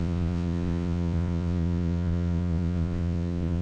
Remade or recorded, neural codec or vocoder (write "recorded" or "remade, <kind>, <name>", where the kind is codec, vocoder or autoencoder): remade, vocoder, Vocos